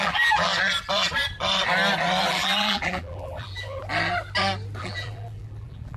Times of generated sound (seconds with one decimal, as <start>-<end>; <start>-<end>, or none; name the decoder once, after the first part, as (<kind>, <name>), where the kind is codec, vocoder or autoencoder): 0.0-0.5 (vocoder, BigVGAN v2); 2.3-3.8; 4.8-6.0